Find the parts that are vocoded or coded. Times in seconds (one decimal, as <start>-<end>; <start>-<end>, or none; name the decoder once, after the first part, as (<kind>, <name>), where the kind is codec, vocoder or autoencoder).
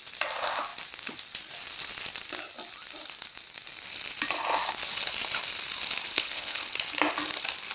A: 6.1-6.7 (codec, HILCodec)